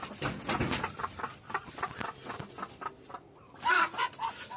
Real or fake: fake